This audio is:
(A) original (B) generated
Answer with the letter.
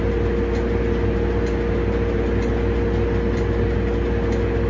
A